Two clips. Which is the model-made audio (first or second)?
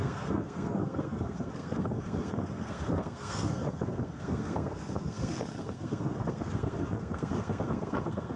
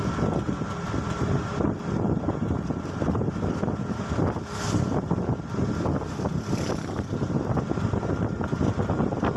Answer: first